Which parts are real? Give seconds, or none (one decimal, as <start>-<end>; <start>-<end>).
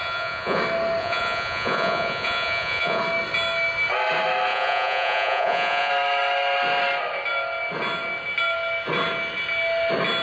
0.6-1.0; 3.0-4.5; 5.9-10.2